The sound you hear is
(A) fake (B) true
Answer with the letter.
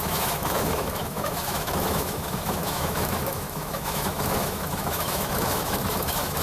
A